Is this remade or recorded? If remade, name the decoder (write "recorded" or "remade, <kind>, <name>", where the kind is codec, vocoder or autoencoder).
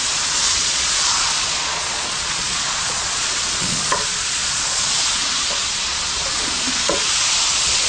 remade, vocoder, Vocos